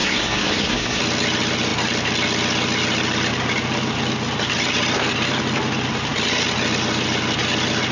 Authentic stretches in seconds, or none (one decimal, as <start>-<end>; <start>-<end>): 1.0-7.9